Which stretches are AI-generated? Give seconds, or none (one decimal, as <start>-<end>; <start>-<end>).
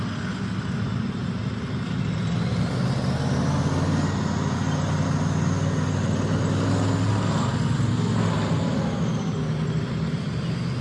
none